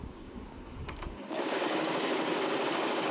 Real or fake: fake